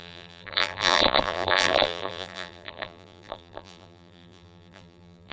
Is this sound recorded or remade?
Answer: remade